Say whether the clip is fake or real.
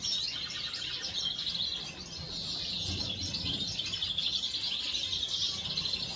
real